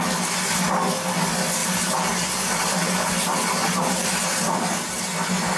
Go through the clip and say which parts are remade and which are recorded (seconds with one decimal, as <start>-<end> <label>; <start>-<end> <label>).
0.0-1.6 recorded; 1.6-5.0 remade; 5.0-5.6 recorded